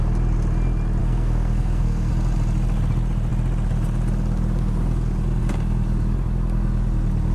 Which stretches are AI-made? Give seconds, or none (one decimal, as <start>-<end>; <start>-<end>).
1.0-2.1